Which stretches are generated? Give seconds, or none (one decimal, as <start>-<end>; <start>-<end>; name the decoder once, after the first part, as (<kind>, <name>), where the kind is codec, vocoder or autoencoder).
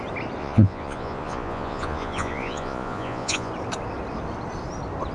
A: 0.4-3.5 (vocoder, Vocos)